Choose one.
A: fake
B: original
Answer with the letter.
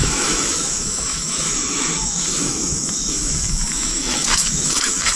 A